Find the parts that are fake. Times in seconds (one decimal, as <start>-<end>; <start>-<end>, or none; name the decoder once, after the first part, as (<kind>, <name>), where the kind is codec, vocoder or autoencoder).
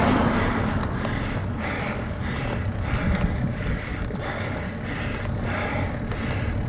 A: 1.4-2.2 (codec, DAC); 3.5-4.4